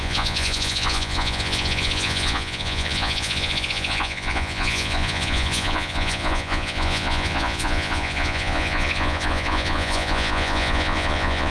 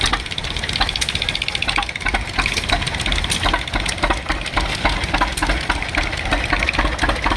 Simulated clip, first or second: first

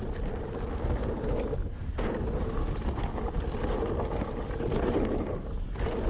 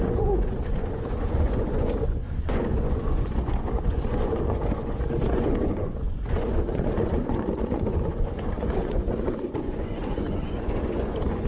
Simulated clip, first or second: second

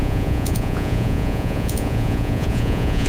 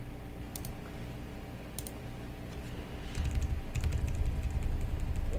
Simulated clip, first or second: first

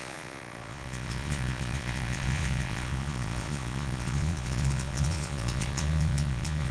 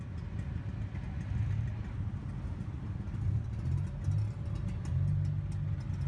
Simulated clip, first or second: first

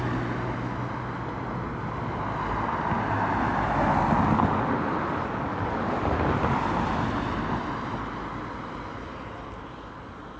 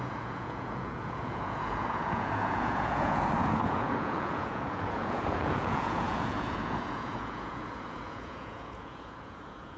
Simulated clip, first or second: second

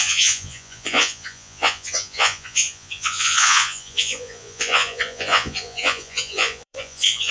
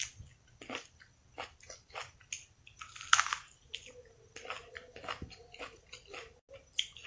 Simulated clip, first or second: first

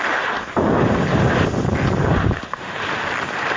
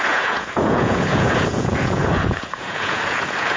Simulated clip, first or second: second